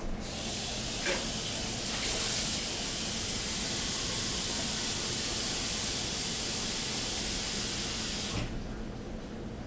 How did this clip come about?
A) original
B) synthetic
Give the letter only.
A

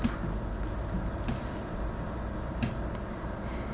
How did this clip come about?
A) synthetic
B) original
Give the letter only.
B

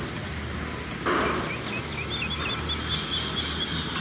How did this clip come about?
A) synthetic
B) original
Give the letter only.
B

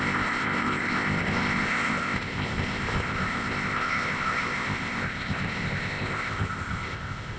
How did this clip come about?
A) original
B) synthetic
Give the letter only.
B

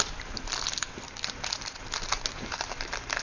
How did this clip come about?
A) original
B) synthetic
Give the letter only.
A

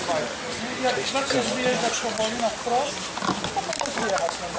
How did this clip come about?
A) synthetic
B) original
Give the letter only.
B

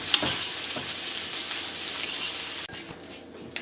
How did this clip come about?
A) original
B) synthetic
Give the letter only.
A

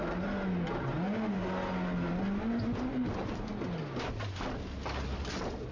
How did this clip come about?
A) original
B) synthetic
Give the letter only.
A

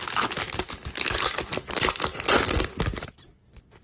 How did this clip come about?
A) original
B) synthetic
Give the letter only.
A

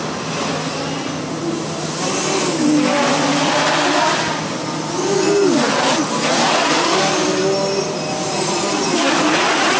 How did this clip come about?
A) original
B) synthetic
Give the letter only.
A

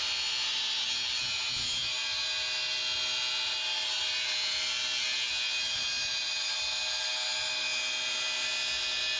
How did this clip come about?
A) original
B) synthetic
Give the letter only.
A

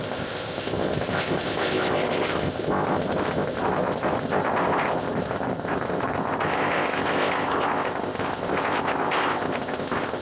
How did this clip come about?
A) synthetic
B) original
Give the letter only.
A